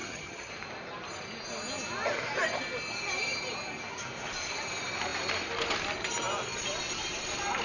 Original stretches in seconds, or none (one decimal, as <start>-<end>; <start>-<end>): 0.5-7.6